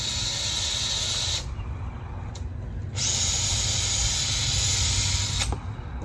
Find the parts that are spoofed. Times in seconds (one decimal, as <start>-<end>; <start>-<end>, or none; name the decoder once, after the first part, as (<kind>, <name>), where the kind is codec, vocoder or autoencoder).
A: none